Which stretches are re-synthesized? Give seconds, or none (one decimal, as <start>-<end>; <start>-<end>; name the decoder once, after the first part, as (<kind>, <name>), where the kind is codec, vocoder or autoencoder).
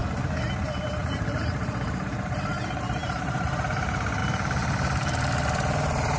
0.6-6.2 (vocoder, BigVGAN v2)